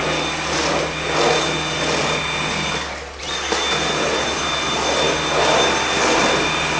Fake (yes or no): no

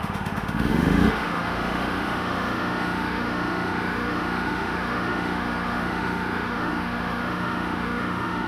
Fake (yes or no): yes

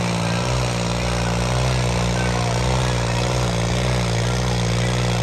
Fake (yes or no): no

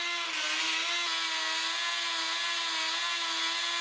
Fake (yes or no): no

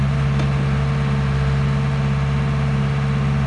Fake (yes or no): no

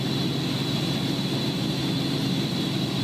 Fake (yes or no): no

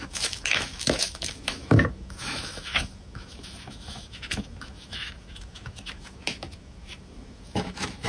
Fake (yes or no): yes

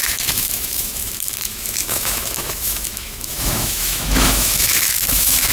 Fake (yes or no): yes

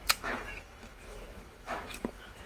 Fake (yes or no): yes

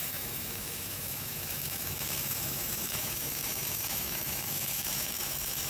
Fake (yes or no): yes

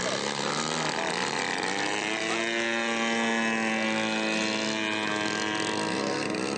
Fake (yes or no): no